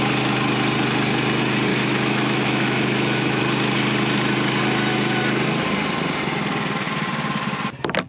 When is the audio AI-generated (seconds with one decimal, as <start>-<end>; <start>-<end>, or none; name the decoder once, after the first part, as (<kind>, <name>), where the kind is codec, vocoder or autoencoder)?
1.7-3.4 (autoencoder, DAC-VAE)